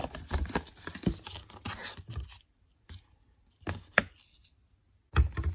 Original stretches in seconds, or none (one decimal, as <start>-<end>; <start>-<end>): 0.0-5.5